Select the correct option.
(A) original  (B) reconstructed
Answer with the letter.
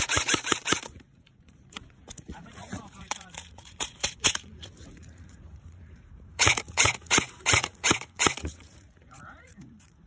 B